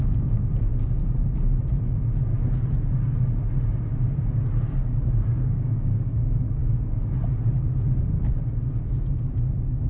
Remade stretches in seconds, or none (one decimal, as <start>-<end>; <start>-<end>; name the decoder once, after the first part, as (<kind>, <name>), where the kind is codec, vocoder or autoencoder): 0.0-0.7 (codec, DAC); 5.3-6.6